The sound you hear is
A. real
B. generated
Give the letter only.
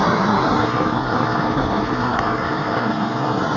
B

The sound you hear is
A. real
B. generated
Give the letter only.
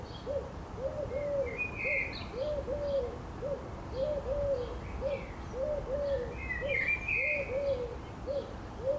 A